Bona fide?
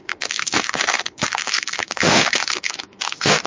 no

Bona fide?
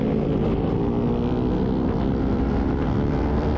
yes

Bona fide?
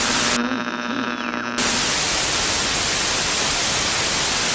yes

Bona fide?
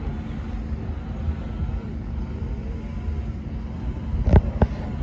yes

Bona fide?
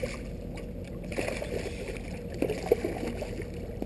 yes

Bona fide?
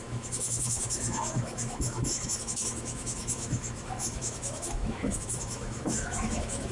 no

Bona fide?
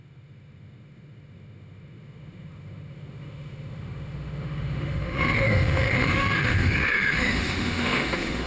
no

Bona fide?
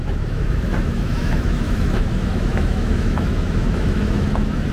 no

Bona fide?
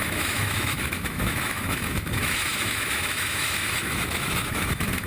no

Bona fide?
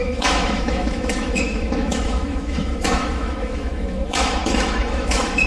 no